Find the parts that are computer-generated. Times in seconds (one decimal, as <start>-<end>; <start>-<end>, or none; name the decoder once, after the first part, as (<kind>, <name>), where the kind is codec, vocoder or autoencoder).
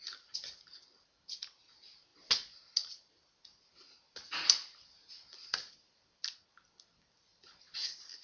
none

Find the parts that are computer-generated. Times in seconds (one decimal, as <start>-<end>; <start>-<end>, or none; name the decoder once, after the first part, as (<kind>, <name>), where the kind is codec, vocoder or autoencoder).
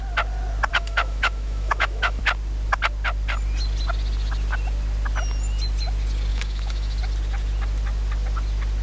0.7-2.2 (autoencoder, DAC-VAE); 6.3-7.0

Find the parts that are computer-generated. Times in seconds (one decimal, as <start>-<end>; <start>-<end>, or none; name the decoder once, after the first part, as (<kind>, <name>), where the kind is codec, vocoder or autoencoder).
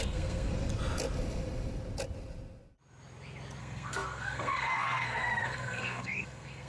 0.0-0.5 (codec, SNAC); 3.6-6.7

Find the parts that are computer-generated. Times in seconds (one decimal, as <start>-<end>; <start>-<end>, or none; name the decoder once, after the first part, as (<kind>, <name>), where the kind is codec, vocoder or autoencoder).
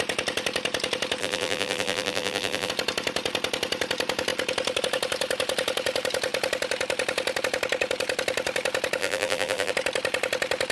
1.2-2.7 (vocoder, BigVGAN v2); 9.0-9.7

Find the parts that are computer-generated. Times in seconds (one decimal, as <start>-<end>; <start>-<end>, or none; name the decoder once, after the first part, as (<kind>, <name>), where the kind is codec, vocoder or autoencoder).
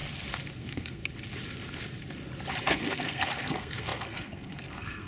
0.6-1.0 (codec, SNAC); 2.6-5.1